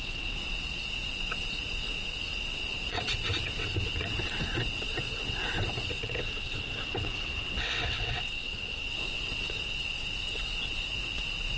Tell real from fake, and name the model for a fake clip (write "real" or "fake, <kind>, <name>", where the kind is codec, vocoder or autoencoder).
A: fake, vocoder, WaveNeXt